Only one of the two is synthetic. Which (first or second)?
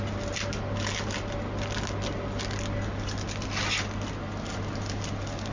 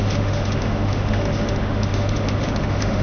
second